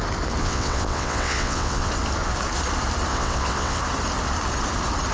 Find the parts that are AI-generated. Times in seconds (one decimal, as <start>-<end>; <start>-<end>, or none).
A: 0.4-1.9; 3.1-3.8